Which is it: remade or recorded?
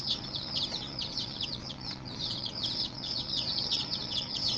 remade